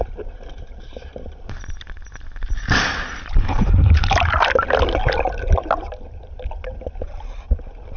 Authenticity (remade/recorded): recorded